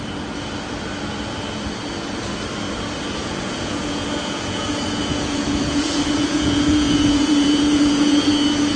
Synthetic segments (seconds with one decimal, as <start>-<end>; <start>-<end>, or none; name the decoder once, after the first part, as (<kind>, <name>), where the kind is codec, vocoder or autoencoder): 3.2-8.3 (vocoder, Vocos)